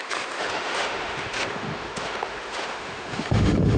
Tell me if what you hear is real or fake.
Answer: fake